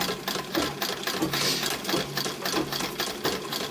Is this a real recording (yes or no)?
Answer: yes